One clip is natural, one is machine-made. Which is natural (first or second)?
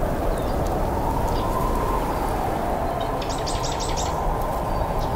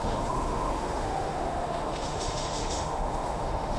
first